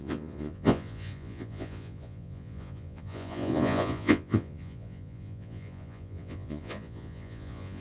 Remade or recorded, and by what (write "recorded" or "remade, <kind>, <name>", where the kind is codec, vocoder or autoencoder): remade, vocoder, Vocos